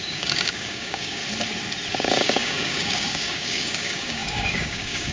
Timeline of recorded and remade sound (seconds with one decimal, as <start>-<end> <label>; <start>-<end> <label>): 0.0-1.2 remade; 1.2-1.9 recorded; 1.9-5.1 remade

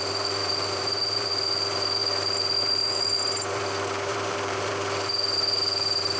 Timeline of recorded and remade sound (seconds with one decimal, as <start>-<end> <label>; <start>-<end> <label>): 0.0-0.4 recorded; 0.4-1.3 remade; 1.3-4.1 recorded; 4.1-4.7 remade; 4.7-6.2 recorded

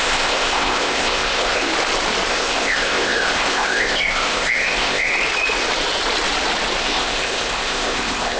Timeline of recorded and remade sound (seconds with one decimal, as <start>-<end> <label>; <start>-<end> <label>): 0.0-1.7 remade; 1.7-2.3 recorded; 2.3-5.1 remade; 5.1-6.8 recorded; 6.8-8.4 remade

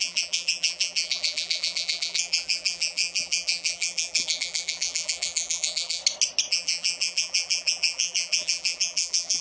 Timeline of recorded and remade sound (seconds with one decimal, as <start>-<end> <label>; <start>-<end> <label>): 0.0-6.0 remade; 6.0-6.5 recorded; 6.5-9.4 remade

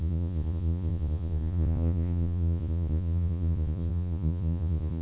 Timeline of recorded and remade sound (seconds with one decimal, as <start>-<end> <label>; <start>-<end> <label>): 0.0-5.0 remade

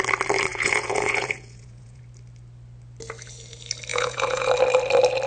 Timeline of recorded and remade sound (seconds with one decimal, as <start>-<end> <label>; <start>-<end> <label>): 0.0-0.5 recorded; 0.5-2.0 remade; 2.0-3.9 recorded; 3.9-4.5 remade; 4.5-5.3 recorded

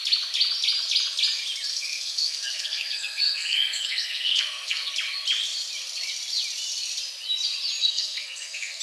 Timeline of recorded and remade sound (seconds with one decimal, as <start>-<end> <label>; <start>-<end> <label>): 0.0-1.7 recorded; 1.7-4.9 remade; 4.9-7.8 recorded; 7.8-8.8 remade